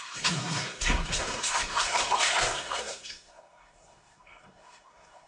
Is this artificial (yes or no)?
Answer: yes